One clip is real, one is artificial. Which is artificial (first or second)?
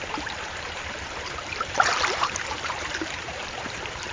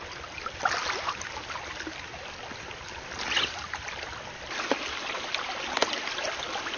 first